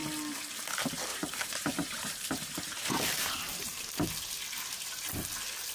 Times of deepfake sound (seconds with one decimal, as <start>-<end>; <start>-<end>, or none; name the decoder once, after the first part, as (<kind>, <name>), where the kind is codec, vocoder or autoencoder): 1.1-3.9 (vocoder, BigVGAN v2)